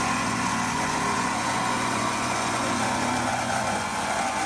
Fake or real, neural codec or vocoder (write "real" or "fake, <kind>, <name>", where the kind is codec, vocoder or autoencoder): fake, vocoder, Vocos